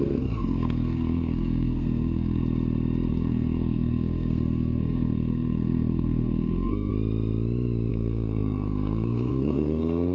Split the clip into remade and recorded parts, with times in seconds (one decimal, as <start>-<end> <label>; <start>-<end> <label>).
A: 0.0-2.4 remade; 2.4-3.1 recorded; 3.1-6.9 remade; 6.9-7.9 recorded; 7.9-10.1 remade